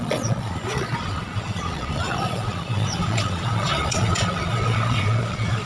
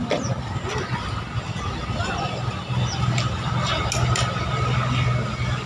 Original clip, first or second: second